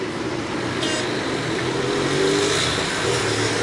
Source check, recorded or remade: recorded